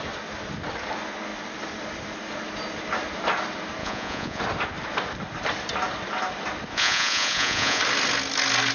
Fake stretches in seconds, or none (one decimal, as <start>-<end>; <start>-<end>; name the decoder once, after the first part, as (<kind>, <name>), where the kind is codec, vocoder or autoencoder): 3.8-4.4 (vocoder, Vocos); 6.7-7.8

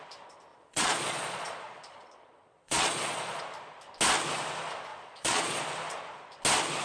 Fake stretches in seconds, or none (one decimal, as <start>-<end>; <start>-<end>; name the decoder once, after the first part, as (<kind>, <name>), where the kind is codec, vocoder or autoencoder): 0.5-3.4 (vocoder, Vocos); 4.9-5.6